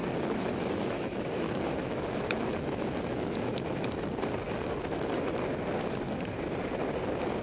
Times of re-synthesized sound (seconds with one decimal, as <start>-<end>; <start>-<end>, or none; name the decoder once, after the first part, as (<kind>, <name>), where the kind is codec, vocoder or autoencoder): 0.0-3.5 (autoencoder, DAC-VAE)